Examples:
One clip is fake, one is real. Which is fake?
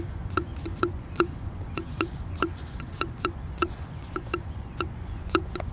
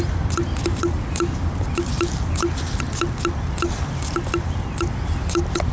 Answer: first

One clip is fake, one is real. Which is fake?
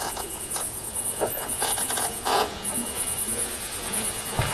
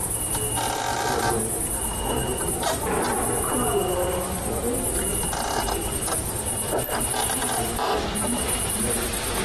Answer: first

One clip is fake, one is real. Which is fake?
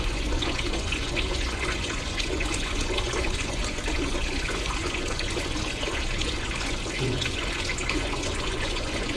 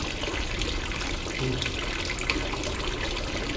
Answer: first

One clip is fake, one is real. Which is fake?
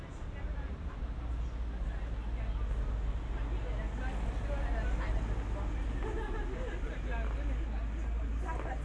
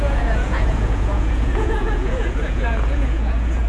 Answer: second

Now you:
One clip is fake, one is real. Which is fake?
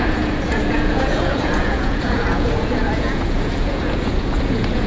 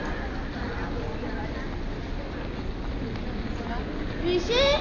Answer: first